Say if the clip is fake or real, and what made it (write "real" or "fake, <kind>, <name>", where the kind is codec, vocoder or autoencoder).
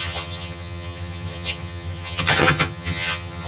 fake, vocoder, HiFi-GAN